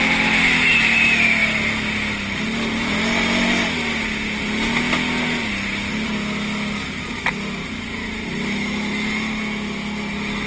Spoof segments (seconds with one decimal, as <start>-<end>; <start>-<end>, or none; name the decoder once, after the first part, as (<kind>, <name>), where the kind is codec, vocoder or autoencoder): none